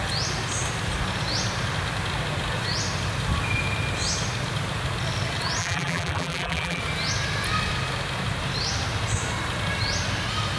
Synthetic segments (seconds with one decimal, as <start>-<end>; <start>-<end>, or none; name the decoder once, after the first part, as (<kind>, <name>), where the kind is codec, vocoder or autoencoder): 5.6-6.8 (vocoder, BigVGAN v2)